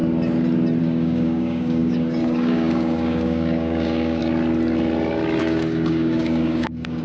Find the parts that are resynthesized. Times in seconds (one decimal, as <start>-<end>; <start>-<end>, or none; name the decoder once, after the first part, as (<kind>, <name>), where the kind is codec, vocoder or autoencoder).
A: 0.8-4.2 (codec, DAC); 5.4-7.0